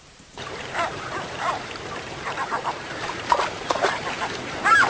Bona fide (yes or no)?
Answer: no